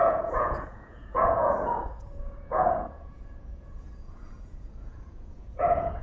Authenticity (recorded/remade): remade